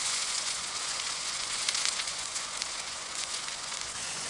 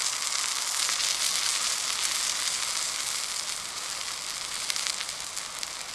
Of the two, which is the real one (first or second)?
second